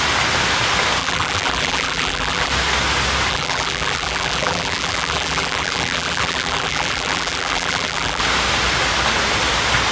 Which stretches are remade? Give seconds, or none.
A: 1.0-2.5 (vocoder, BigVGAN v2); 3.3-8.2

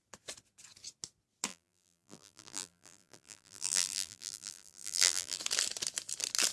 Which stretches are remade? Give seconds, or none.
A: 1.5-5.4 (vocoder, BigVGAN v2)

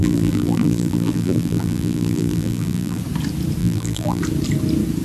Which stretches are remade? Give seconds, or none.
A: 0.0-3.0 (vocoder, BigVGAN v2); 3.6-4.2

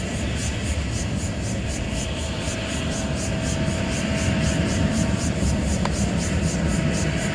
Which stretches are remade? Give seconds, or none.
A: 0.0-0.4 (vocoder, BigVGAN v2); 1.7-7.3

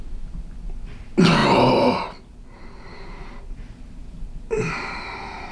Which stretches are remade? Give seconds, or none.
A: none

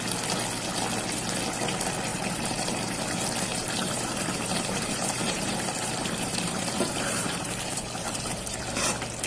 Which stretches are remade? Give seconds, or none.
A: 2.1-3.0 (vocoder, BigVGAN v2); 3.5-8.6